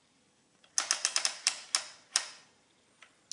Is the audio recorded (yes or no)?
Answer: yes